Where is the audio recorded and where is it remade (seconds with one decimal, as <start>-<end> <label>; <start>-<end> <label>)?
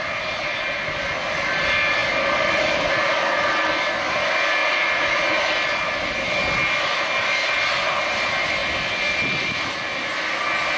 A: 0.0-4.6 recorded; 4.6-5.4 remade; 5.4-10.8 recorded